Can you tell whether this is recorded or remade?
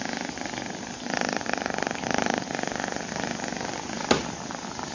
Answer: recorded